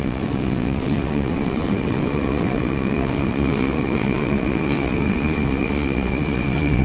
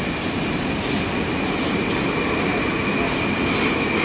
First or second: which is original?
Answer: second